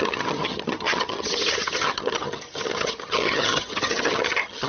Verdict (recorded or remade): remade